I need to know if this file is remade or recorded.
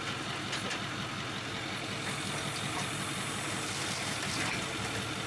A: recorded